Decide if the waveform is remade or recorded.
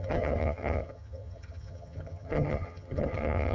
remade